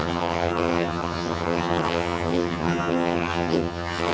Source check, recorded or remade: remade